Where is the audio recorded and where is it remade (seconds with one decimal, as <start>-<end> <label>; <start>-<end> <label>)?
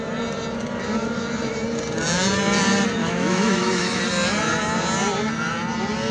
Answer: 0.0-3.0 recorded; 3.0-4.0 remade; 4.0-6.1 recorded